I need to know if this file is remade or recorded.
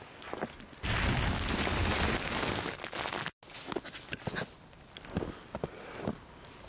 recorded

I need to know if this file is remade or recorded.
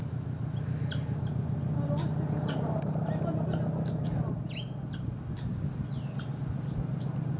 recorded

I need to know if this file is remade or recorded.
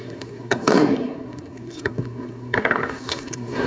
remade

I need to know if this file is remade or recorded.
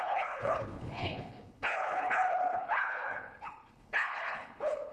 remade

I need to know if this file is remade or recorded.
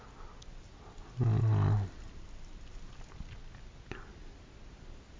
recorded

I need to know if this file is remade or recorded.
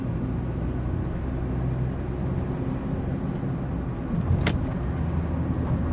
recorded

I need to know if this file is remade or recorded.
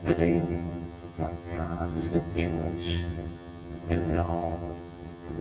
remade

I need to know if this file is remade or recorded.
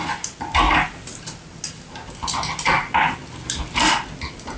recorded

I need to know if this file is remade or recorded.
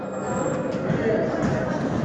recorded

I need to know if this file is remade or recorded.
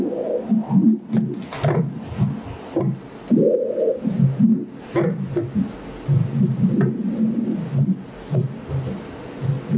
recorded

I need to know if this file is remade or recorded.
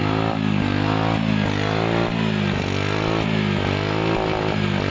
recorded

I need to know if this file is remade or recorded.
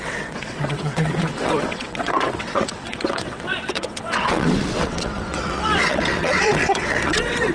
remade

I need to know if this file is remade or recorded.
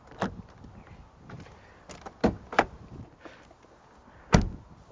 recorded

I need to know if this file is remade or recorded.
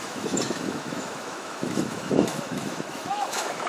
remade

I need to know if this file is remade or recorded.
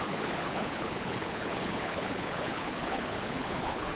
remade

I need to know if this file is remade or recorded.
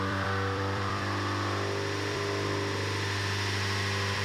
remade